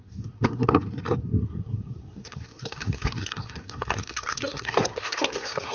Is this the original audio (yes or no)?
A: no